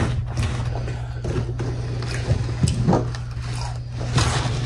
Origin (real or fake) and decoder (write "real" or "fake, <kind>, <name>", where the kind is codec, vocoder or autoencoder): real